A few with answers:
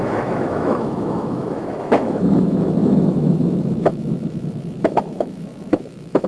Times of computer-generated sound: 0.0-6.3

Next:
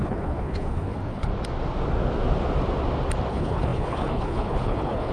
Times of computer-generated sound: 0.0-1.3; 3.3-5.1